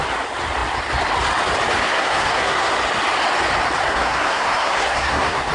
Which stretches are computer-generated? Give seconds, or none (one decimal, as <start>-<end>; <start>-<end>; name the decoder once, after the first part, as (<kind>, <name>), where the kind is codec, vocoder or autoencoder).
1.8-2.7 (codec, SNAC); 3.8-5.5